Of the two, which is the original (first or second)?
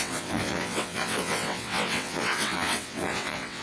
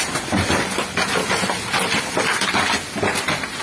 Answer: second